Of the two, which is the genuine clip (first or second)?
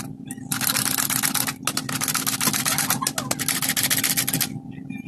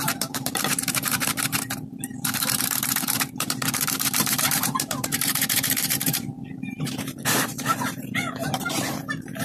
first